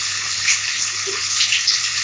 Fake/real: fake